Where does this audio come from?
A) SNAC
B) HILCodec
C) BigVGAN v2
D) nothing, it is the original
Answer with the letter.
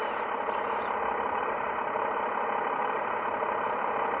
D